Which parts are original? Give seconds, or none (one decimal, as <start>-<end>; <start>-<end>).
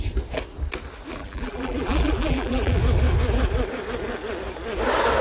0.0-1.2; 2.8-5.2